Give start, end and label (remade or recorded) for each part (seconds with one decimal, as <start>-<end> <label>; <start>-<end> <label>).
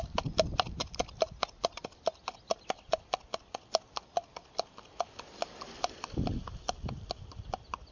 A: 0.0-7.9 recorded